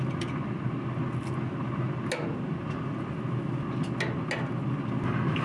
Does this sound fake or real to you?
real